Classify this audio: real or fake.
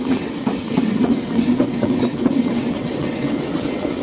fake